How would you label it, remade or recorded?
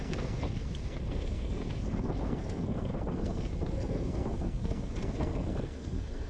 remade